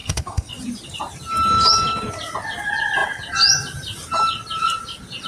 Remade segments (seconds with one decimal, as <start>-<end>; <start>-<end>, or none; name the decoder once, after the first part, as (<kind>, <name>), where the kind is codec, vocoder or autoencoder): 0.0-0.5 (codec, SNAC)